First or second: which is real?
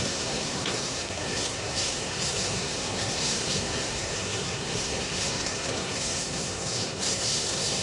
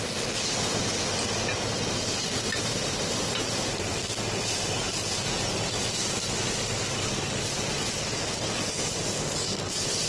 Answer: second